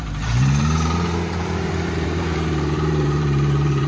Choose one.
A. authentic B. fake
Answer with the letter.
B